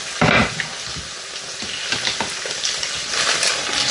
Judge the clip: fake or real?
real